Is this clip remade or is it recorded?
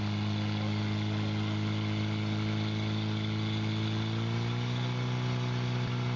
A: recorded